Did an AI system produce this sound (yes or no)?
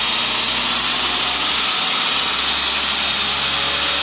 no